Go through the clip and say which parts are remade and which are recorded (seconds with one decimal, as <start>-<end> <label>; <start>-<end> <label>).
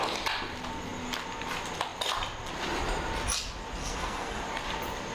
0.0-3.8 recorded; 3.8-4.4 remade; 4.4-5.1 recorded